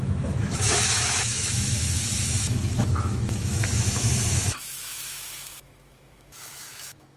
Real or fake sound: fake